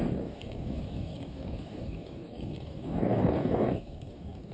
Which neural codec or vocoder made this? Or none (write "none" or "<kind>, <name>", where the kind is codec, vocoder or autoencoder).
codec, DAC